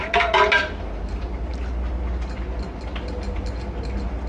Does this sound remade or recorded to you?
recorded